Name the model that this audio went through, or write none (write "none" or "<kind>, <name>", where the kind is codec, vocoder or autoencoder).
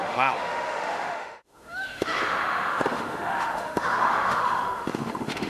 autoencoder, DAC-VAE